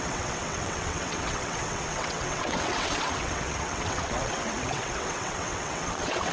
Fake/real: fake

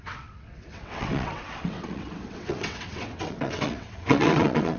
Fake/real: fake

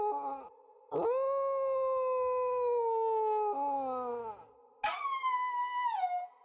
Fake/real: real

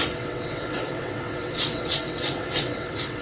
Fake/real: fake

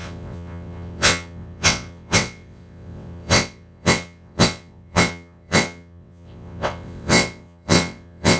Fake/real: fake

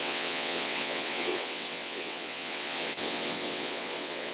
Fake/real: fake